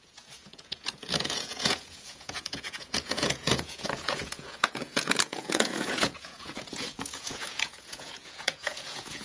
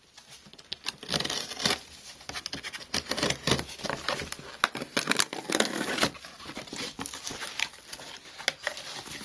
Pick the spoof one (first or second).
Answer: first